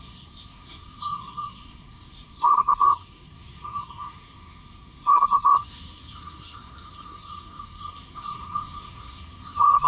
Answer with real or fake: fake